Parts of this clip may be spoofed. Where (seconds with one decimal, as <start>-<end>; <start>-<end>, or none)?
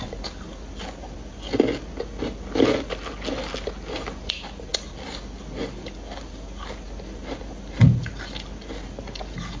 none